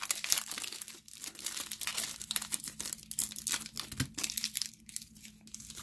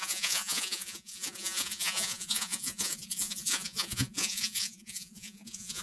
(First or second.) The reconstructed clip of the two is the second